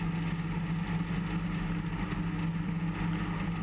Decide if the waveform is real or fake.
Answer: real